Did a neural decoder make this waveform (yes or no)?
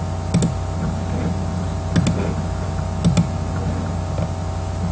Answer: no